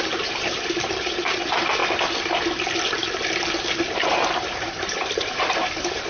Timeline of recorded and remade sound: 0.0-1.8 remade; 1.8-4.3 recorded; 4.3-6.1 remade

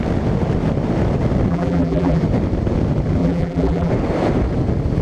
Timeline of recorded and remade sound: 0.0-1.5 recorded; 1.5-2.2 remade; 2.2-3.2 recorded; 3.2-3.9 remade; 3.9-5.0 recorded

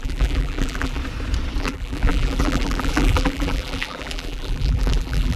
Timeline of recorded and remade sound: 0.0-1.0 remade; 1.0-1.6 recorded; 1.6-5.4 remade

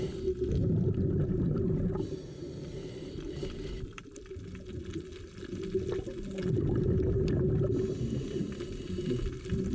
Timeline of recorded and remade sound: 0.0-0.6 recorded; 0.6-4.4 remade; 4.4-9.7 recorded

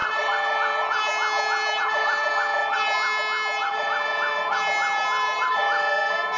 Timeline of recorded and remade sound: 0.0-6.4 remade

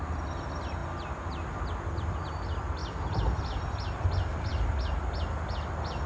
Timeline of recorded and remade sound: 0.0-2.8 recorded; 2.8-3.4 remade; 3.4-6.1 recorded